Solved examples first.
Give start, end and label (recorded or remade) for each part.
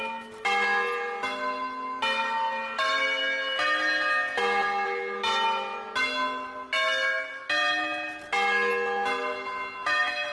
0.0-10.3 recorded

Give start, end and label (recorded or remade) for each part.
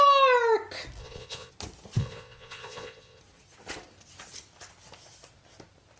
0.0-1.0 recorded; 1.0-1.5 remade; 1.5-2.0 recorded; 2.0-3.2 remade; 3.2-6.0 recorded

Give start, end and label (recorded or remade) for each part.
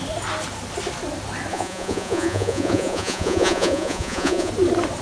0.0-1.5 recorded; 1.5-4.5 remade; 4.5-5.0 recorded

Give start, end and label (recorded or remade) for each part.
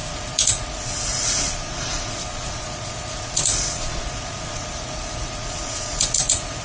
0.0-6.6 remade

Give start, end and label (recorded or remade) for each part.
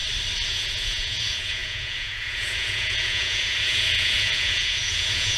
0.0-0.5 recorded; 0.5-5.4 remade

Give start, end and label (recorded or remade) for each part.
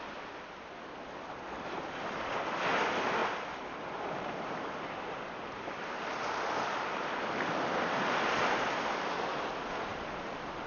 0.0-10.7 recorded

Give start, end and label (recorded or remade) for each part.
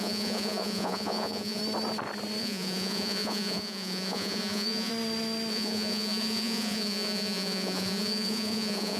0.0-1.6 remade; 1.6-2.4 recorded; 2.4-4.9 remade; 4.9-5.5 recorded; 5.5-9.0 remade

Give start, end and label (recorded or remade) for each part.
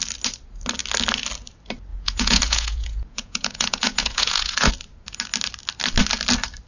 0.0-1.9 recorded; 1.9-4.7 remade; 4.7-6.7 recorded